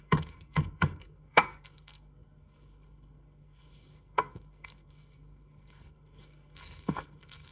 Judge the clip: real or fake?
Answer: fake